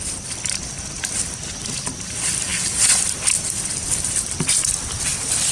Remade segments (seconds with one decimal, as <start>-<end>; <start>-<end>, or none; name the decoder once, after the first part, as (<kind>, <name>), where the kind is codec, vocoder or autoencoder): none